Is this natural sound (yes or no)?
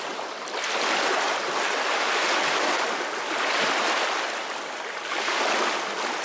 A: yes